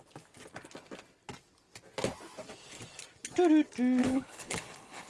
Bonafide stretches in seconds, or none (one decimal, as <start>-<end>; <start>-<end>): 0.0-4.0